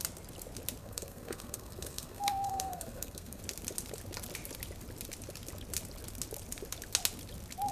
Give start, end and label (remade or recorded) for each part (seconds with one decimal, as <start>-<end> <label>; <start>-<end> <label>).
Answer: 0.0-0.8 recorded; 0.8-3.4 remade; 3.4-7.7 recorded

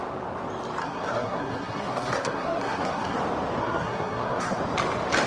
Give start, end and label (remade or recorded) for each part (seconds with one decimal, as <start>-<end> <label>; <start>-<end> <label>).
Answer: 0.0-0.8 recorded; 0.8-3.2 remade; 3.2-3.6 recorded; 3.6-4.6 remade; 4.6-5.3 recorded

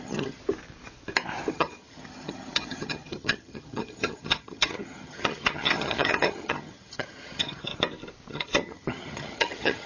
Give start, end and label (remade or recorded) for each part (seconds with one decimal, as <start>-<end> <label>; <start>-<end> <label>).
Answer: 0.0-0.4 remade; 0.4-1.5 recorded; 1.5-7.7 remade; 7.7-8.3 recorded; 8.3-9.9 remade